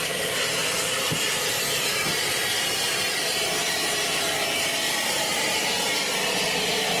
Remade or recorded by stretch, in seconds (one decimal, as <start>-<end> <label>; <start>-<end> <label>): 0.0-0.6 recorded; 0.6-2.9 remade; 2.9-7.0 recorded